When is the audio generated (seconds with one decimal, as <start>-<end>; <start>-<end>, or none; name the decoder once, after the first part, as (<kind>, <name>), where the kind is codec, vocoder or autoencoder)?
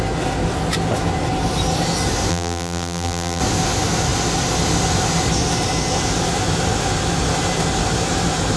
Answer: 2.3-3.4 (vocoder, BigVGAN v2)